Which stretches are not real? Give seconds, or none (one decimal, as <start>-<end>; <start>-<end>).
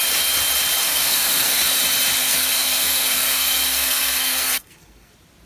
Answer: 0.8-1.8; 2.2-5.1